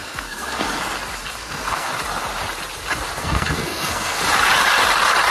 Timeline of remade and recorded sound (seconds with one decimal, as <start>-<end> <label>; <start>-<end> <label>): 0.0-0.8 remade; 0.8-1.4 recorded; 1.4-1.9 remade; 1.9-3.2 recorded; 3.2-4.2 remade; 4.2-5.3 recorded